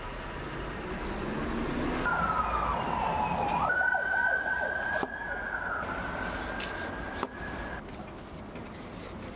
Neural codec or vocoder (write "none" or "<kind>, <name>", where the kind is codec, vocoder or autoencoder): none